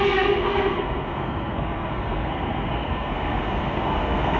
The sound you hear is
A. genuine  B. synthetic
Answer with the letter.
B